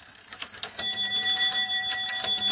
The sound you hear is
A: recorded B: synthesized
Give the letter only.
B